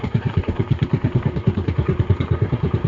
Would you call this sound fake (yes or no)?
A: yes